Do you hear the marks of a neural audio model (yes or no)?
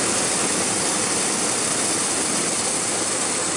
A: no